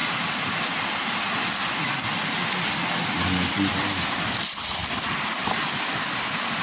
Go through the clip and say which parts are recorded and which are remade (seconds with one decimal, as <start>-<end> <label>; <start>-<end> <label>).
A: 0.0-6.6 recorded